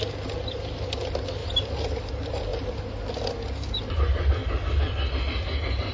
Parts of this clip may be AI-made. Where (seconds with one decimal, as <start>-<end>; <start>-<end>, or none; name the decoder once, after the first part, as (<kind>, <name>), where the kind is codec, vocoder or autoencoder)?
none